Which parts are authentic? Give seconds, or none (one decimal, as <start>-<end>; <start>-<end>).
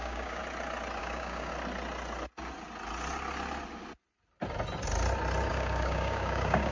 0.4-1.0; 1.5-5.5